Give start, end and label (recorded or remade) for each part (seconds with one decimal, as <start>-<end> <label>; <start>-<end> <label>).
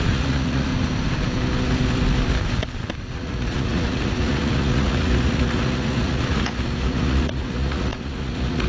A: 0.0-0.7 remade; 0.7-3.0 recorded; 3.0-8.7 remade